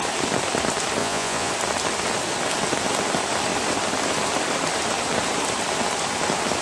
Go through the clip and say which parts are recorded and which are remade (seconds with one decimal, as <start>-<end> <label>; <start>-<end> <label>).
0.0-1.0 recorded; 1.0-1.5 remade; 1.5-6.6 recorded